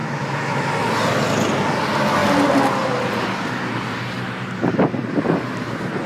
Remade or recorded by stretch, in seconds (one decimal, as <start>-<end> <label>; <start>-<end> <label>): 0.0-0.7 remade; 0.7-6.1 recorded